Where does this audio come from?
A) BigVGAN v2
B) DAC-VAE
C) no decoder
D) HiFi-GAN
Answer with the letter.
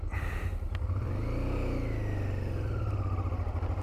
C